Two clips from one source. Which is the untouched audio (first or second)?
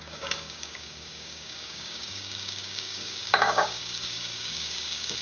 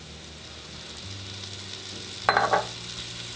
second